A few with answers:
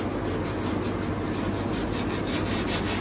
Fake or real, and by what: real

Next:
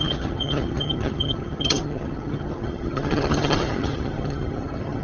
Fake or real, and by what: fake, vocoder, HiFi-GAN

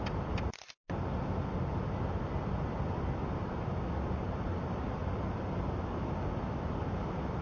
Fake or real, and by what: real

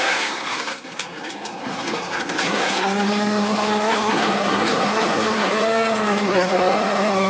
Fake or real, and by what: fake, codec, SNAC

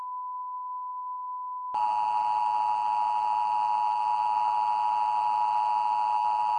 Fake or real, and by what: real